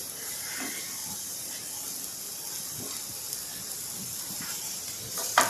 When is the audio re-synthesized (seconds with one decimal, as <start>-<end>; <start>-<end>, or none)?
0.0-1.0; 4.2-5.5